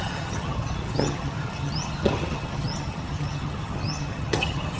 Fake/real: fake